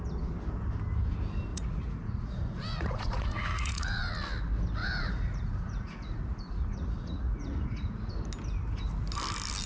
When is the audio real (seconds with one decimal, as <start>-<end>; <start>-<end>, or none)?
0.0-1.5; 4.1-4.8; 8.1-9.7